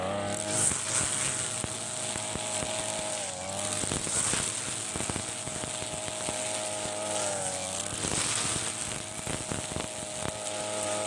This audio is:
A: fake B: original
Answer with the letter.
B